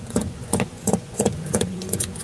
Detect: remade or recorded remade